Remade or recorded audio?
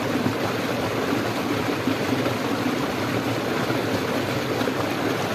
recorded